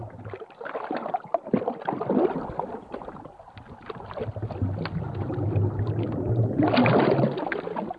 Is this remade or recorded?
recorded